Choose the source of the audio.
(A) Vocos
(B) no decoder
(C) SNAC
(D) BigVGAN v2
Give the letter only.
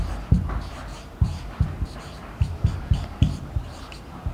D